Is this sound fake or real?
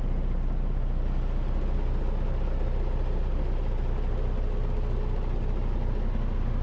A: real